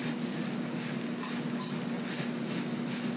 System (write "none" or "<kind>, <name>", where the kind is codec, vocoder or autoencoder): none